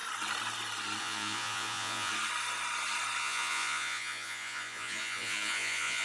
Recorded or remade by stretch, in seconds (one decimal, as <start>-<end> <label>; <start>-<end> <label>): 0.0-1.0 recorded; 1.0-2.1 remade; 2.1-3.2 recorded; 3.2-6.0 remade

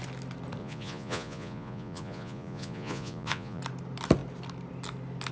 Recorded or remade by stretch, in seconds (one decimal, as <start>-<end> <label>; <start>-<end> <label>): 0.0-0.6 recorded; 0.6-3.6 remade; 3.6-5.3 recorded